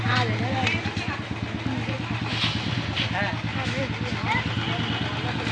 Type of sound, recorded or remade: recorded